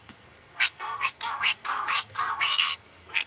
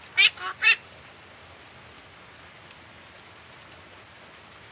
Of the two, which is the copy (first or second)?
first